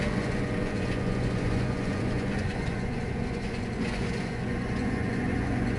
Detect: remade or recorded remade